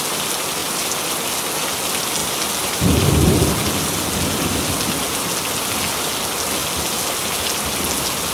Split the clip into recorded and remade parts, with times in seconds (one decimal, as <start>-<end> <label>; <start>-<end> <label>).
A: 0.0-8.3 recorded